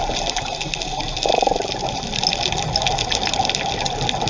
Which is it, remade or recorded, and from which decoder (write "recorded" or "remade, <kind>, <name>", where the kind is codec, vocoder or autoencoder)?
recorded